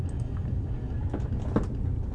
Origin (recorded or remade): recorded